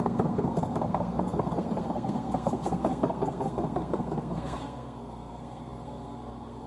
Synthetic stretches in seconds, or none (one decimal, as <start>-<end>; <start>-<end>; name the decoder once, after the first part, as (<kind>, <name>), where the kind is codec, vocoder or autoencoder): 0.0-6.7 (codec, SNAC)